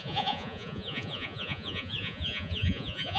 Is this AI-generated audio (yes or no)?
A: yes